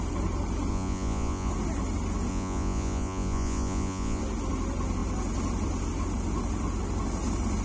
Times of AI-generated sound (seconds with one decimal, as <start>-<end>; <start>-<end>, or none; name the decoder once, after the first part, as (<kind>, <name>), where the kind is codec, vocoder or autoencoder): 0.7-1.5 (vocoder, Vocos); 2.3-4.2